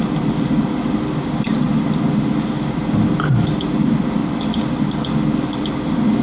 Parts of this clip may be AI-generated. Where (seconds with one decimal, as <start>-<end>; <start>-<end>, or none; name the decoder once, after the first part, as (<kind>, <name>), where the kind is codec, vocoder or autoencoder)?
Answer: none